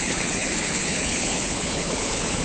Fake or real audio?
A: fake